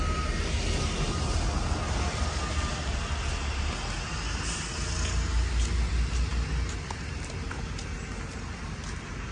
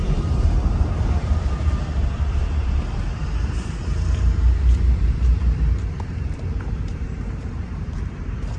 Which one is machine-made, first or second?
second